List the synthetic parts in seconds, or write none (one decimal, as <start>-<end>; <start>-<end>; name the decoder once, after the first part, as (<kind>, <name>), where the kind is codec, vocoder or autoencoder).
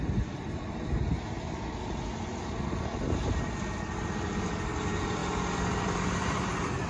0.0-5.2 (vocoder, BigVGAN v2); 5.8-6.9